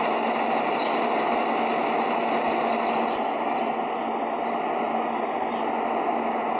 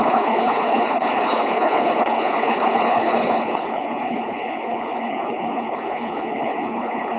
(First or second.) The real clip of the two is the first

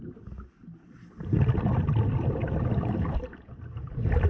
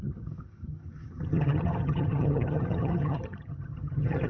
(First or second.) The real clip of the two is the first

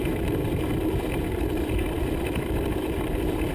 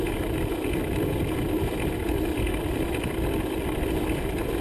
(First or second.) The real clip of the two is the second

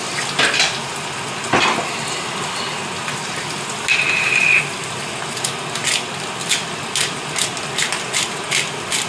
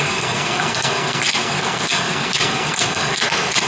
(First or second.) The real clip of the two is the first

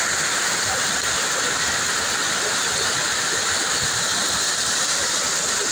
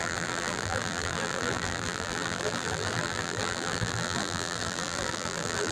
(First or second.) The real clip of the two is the first